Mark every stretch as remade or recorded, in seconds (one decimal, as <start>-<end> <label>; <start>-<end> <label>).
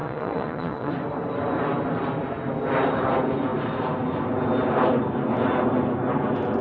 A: 0.0-0.9 remade; 0.9-6.6 recorded